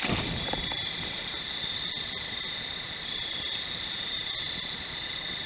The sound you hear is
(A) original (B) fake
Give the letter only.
B